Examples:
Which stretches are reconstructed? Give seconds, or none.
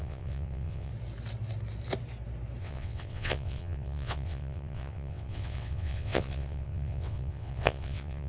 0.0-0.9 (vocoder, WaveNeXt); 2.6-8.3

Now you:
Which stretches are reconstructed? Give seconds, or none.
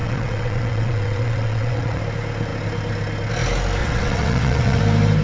0.0-2.0 (vocoder, WaveNeXt); 3.8-4.8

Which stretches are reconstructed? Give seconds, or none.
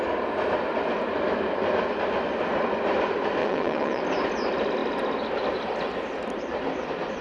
3.4-4.0 (vocoder, WaveNeXt)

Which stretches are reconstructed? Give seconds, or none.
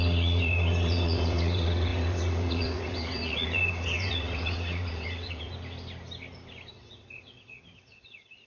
0.0-5.5 (vocoder, WaveNeXt); 6.7-8.5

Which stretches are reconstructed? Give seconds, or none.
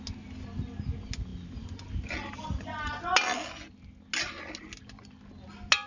none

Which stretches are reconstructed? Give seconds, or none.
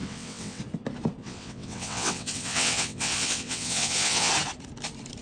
0.0-0.6 (vocoder, WaveNeXt); 1.2-4.3